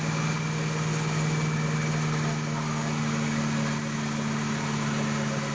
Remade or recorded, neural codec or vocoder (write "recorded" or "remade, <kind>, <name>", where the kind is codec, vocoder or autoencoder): recorded